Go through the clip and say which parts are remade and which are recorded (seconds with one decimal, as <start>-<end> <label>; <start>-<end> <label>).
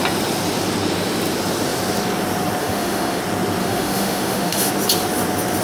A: 0.0-2.6 recorded; 2.6-3.2 remade; 3.2-3.6 recorded; 3.6-4.7 remade; 4.7-5.6 recorded